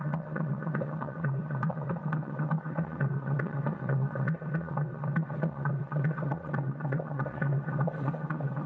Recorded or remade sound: remade